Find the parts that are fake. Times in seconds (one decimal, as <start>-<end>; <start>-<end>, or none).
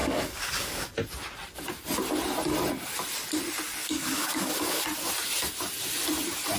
0.0-0.9; 3.8-4.8